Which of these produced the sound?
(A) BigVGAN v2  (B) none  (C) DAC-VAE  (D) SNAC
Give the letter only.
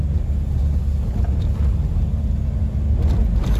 B